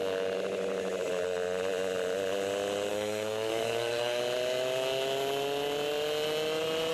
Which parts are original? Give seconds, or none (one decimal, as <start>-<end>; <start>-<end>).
0.0-2.9; 4.2-6.9